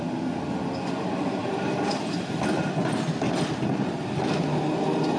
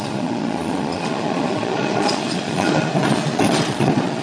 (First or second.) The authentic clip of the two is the first